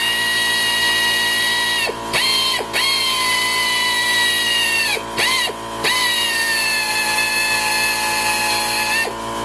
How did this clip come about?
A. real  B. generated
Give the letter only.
A